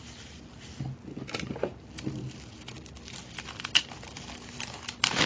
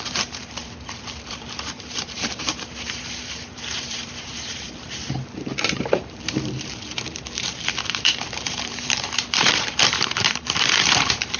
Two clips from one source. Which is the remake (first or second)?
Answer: second